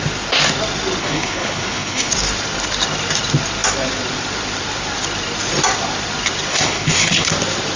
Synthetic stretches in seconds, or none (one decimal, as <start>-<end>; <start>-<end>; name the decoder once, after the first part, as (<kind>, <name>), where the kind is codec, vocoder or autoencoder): 1.0-2.1 (codec, HILCodec); 6.5-7.3